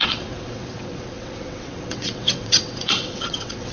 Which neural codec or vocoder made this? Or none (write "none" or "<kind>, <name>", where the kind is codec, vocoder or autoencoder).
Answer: vocoder, WaveNeXt